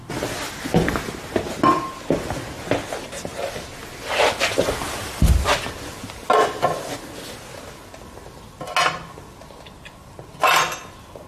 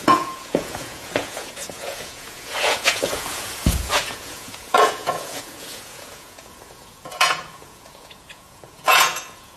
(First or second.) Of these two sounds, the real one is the first